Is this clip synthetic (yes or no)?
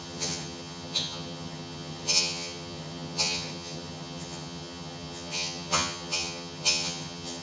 yes